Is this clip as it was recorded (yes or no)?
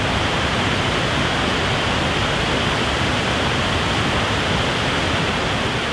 yes